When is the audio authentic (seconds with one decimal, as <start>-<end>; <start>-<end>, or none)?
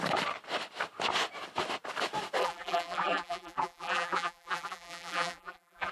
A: 0.0-2.4